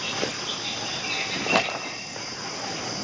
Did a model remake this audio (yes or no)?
no